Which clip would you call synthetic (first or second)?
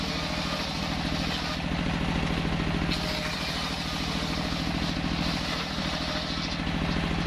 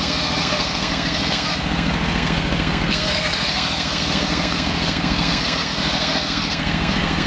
second